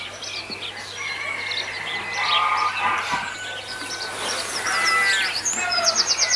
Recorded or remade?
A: recorded